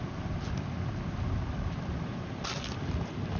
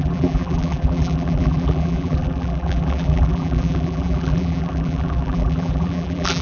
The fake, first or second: second